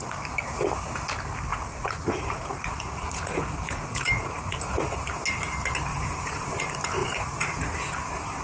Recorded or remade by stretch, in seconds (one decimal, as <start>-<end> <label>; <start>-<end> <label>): 0.0-1.5 recorded; 1.5-4.6 remade; 4.6-5.9 recorded; 5.9-6.6 remade; 6.6-7.0 recorded; 7.0-7.8 remade; 7.8-8.4 recorded